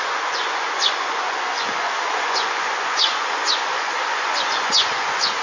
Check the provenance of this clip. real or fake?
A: fake